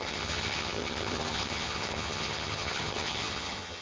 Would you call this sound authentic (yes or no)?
no